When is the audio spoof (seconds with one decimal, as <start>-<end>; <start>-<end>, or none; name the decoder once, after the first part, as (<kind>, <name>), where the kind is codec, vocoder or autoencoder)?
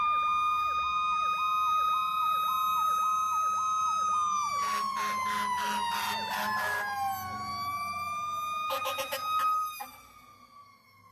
none